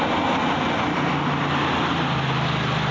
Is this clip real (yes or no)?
yes